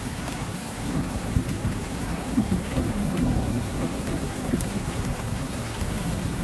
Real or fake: fake